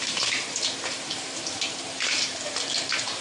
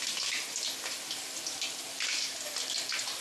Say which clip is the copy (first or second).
first